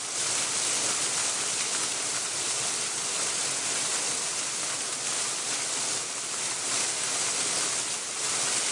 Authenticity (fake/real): real